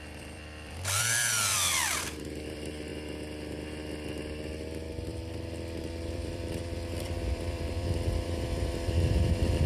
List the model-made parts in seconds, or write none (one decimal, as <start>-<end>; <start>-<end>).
0.0-2.9; 5.8-9.7